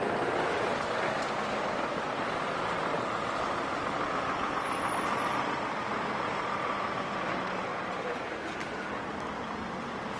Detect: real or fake real